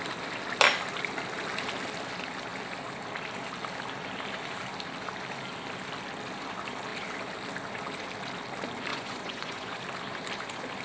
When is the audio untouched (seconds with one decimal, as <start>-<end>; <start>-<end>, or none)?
0.0-8.9; 9.8-10.8